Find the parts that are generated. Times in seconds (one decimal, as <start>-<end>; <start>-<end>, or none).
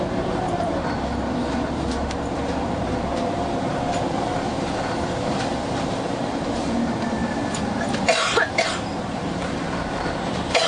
0.0-10.7